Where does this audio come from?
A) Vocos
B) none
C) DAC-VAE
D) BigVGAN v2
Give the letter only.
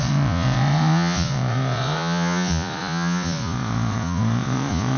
A